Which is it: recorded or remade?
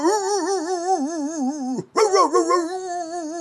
recorded